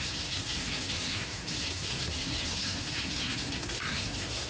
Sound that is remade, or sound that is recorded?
remade